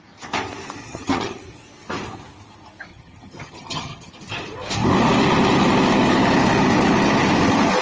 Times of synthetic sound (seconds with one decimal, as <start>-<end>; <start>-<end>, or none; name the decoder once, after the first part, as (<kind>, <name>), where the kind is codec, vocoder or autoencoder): 0.8-1.4 (vocoder, HiFi-GAN); 2.9-4.1